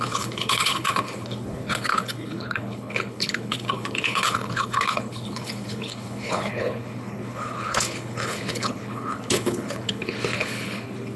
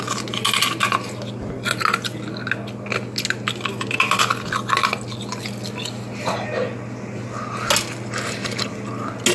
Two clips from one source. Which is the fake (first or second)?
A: first